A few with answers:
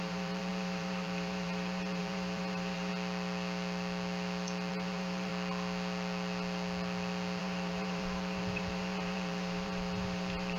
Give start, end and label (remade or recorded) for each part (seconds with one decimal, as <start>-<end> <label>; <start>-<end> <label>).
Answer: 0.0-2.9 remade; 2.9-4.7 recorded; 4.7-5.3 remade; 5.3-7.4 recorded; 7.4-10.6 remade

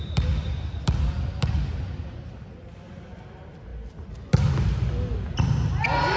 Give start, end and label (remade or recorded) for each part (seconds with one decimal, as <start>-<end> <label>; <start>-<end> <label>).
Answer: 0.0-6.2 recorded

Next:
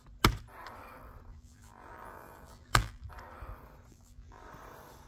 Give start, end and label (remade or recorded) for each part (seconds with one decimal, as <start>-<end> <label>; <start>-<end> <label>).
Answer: 0.0-1.3 recorded; 1.3-3.1 remade; 3.1-3.9 recorded; 3.9-4.4 remade; 4.4-5.1 recorded